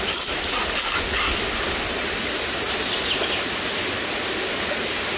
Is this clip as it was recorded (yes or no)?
yes